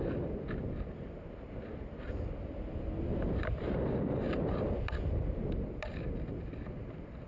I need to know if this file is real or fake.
real